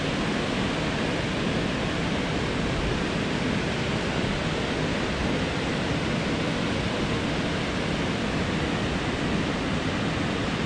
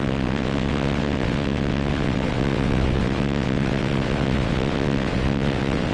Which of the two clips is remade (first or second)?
second